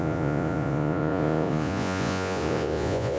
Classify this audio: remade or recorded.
remade